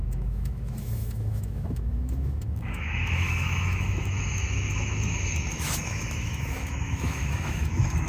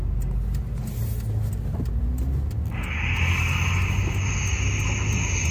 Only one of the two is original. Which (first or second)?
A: second